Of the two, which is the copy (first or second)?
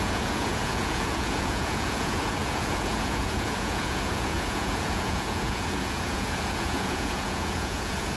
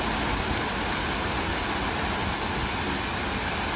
first